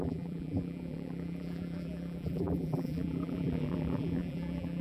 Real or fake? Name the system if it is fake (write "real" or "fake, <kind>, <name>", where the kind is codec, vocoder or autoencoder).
fake, vocoder, BigVGAN v2